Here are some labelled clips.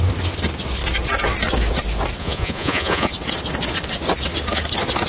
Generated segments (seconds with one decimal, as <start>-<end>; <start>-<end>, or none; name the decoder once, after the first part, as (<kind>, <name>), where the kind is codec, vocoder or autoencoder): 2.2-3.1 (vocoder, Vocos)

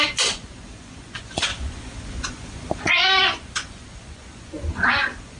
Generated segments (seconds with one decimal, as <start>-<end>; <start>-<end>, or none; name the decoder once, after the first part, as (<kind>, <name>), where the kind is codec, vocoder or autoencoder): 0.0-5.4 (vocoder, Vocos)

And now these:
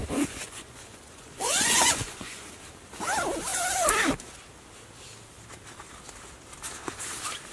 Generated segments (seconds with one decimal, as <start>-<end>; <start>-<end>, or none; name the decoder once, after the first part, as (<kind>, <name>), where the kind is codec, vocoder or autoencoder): 0.0-2.5 (vocoder, Vocos)